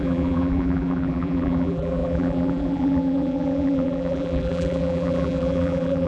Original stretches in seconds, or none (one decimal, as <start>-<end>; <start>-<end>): none